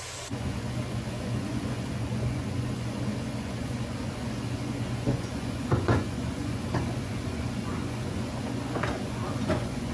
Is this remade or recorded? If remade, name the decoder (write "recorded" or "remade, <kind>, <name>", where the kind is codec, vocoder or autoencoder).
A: remade, vocoder, Vocos